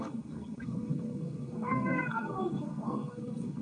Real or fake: fake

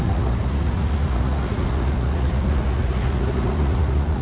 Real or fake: fake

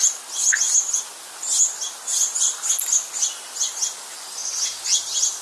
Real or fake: real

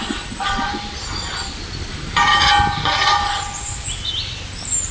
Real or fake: real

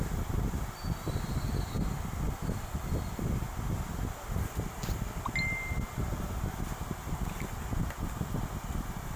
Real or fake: real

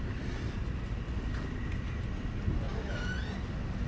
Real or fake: real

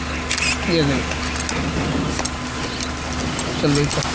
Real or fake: real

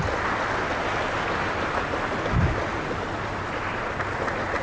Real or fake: real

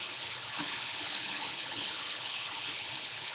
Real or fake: fake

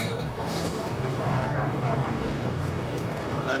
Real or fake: fake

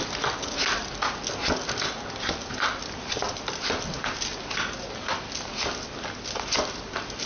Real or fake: real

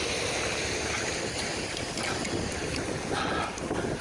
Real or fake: real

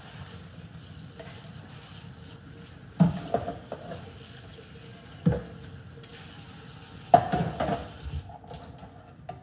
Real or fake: real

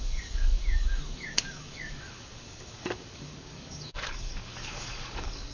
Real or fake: fake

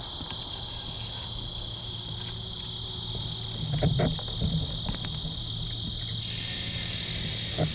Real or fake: real